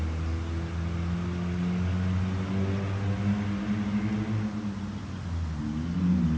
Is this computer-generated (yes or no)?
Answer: no